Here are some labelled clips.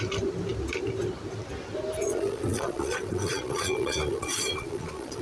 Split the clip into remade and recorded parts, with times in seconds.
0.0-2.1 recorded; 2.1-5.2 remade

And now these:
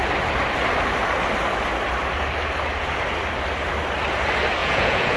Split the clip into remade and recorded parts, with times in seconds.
0.0-4.6 recorded; 4.6-5.2 remade

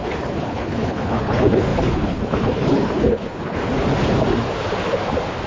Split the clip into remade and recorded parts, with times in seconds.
0.0-3.6 remade; 3.6-5.5 recorded

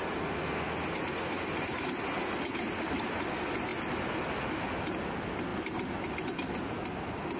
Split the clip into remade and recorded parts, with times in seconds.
0.0-7.4 recorded

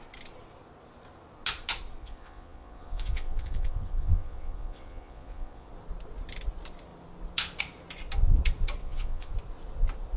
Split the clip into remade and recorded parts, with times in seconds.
0.0-2.0 recorded; 2.0-5.7 remade; 5.7-8.8 recorded; 8.8-9.3 remade; 9.3-10.2 recorded

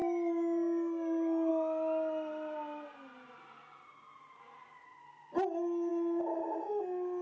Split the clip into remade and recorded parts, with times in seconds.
0.0-7.2 recorded

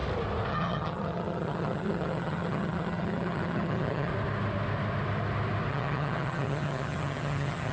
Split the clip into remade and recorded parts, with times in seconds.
0.0-0.5 recorded; 0.5-4.1 remade; 4.1-5.7 recorded; 5.7-7.7 remade

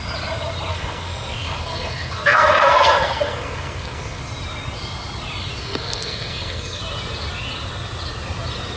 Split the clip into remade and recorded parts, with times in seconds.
0.0-0.7 recorded; 0.7-4.2 remade; 4.2-5.6 recorded; 5.6-6.8 remade; 6.8-8.8 recorded